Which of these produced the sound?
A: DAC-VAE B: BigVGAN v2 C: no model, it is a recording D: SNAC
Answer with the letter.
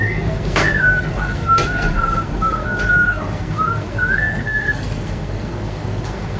D